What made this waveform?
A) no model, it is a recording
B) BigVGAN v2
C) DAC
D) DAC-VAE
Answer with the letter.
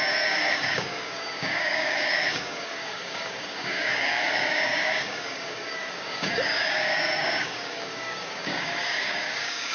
C